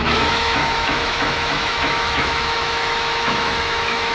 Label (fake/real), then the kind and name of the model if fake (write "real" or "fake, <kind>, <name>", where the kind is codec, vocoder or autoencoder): fake, autoencoder, DAC-VAE